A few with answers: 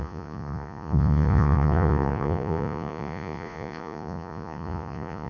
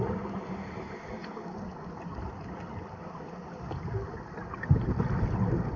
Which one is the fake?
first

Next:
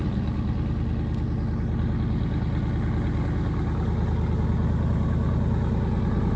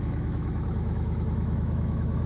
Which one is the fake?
second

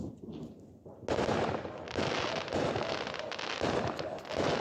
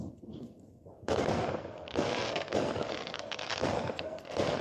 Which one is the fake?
second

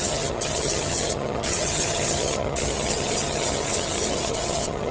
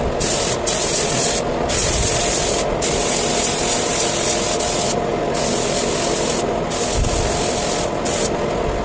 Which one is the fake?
first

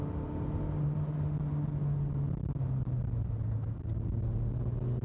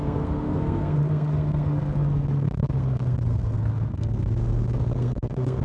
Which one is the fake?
second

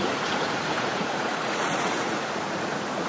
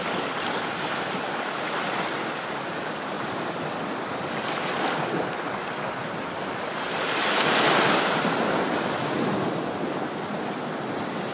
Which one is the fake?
first